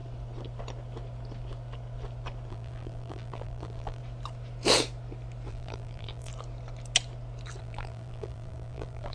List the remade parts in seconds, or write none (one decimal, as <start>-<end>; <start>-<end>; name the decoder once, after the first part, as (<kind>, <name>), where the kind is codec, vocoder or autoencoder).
2.5-4.0 (vocoder, BigVGAN v2); 5.5-6.3; 7.6-9.1